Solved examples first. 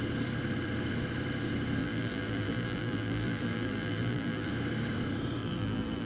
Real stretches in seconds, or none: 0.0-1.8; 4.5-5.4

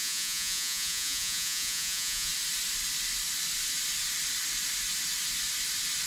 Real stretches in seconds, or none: 2.3-6.1

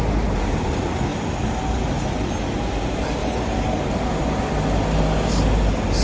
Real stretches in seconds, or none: 0.0-3.2; 3.8-6.0

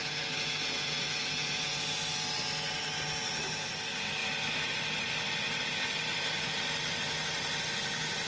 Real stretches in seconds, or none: 2.0-8.3